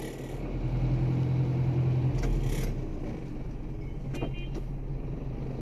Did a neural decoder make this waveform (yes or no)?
no